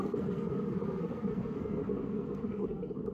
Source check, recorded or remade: remade